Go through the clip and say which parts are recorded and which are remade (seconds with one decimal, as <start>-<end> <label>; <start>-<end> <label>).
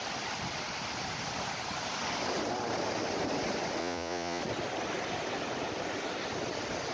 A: 0.0-3.8 recorded; 3.8-4.4 remade; 4.4-6.9 recorded